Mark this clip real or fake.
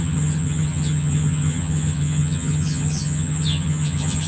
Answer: fake